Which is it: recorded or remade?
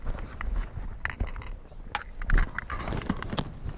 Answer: recorded